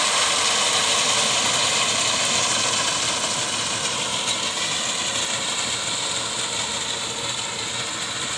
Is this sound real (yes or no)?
yes